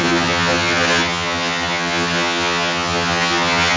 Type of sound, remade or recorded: remade